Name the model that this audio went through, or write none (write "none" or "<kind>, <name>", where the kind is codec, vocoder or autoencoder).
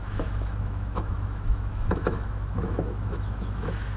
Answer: autoencoder, DAC-VAE